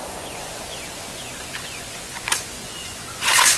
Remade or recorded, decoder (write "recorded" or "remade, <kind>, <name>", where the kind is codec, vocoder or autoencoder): remade, vocoder, Vocos